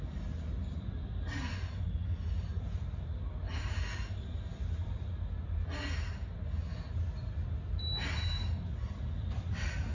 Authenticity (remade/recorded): recorded